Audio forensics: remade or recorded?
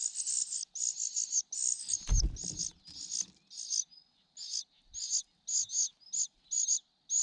recorded